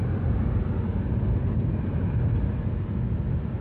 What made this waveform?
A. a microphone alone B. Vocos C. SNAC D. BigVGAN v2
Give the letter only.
A